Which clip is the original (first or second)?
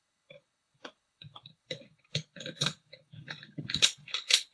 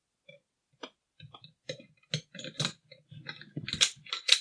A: second